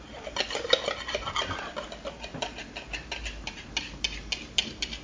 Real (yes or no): yes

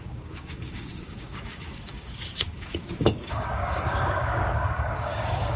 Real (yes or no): no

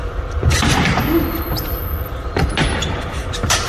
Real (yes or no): no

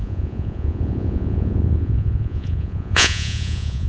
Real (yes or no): no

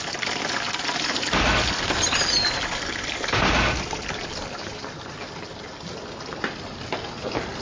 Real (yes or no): yes